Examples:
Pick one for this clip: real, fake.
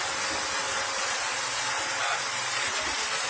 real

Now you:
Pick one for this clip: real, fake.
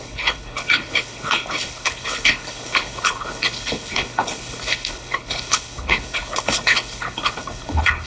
fake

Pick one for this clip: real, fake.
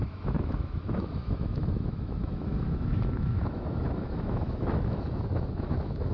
fake